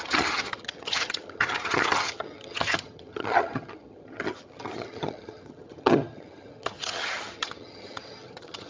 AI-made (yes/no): yes